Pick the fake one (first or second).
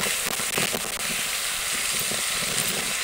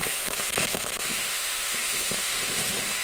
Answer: second